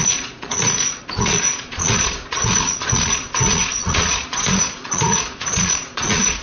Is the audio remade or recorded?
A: remade